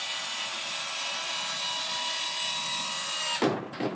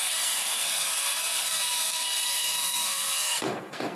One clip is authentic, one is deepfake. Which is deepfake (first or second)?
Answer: second